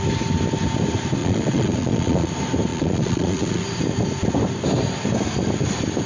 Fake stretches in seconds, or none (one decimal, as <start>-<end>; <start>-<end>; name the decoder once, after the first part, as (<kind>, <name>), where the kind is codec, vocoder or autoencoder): 1.2-2.3 (vocoder, Vocos); 2.7-3.6